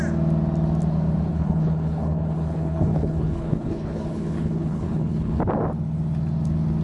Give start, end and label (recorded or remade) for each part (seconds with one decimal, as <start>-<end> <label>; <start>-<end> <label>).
0.0-1.3 recorded; 1.3-5.4 remade; 5.4-6.8 recorded